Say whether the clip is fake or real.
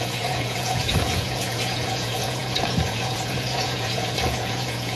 fake